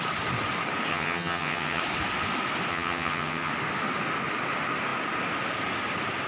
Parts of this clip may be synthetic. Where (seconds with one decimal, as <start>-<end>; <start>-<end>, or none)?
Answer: 0.9-1.8; 2.7-3.5